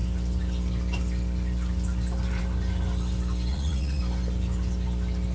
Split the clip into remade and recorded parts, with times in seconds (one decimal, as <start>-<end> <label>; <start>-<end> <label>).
0.0-3.5 recorded; 3.5-4.0 remade; 4.0-5.3 recorded